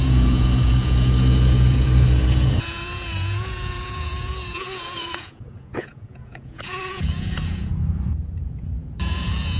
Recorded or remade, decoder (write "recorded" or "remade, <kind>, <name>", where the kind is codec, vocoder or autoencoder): remade, vocoder, Vocos